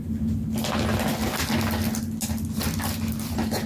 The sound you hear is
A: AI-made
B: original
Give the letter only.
B